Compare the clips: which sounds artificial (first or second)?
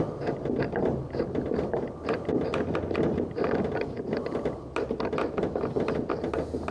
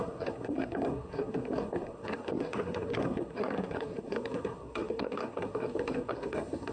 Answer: second